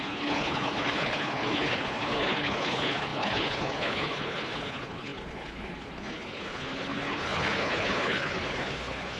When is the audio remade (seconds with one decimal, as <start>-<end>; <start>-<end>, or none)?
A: 0.0-9.2